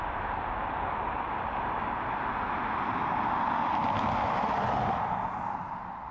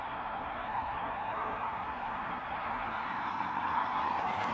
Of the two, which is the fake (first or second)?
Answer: second